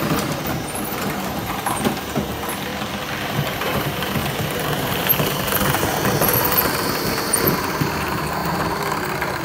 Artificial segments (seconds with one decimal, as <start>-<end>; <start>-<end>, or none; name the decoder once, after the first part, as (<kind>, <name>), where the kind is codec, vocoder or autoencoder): 0.0-2.7 (vocoder, BigVGAN v2); 3.3-9.4